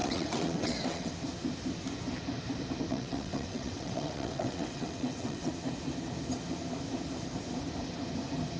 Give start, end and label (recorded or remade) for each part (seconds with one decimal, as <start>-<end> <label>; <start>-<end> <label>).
0.0-1.1 remade; 1.1-2.9 recorded; 2.9-5.5 remade; 5.5-8.6 recorded